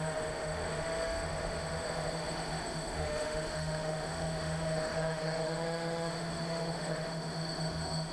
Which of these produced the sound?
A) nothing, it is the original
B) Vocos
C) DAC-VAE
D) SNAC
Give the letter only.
C